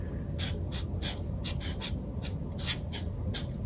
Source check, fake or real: real